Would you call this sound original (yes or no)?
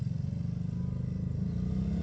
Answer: yes